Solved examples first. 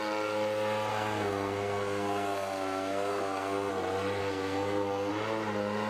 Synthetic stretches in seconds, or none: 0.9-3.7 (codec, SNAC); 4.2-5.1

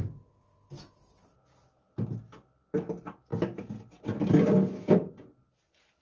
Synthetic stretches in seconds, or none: none

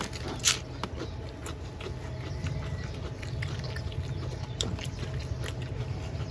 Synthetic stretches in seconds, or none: none

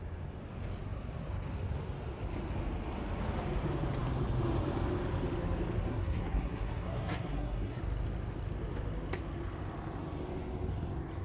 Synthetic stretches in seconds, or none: 5.9-7.8 (codec, SNAC)

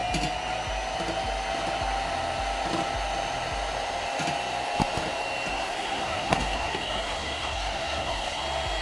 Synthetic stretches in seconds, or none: 5.5-8.4 (codec, SNAC)

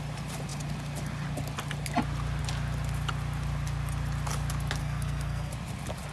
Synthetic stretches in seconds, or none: 4.8-5.5 (codec, SNAC)

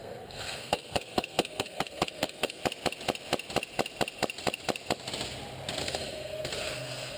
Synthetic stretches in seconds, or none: 0.0-2.6 (codec, SNAC); 5.8-7.2

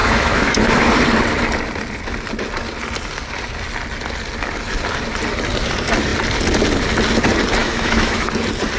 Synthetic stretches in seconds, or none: 0.0-0.9 (autoencoder, DAC-VAE); 7.6-8.3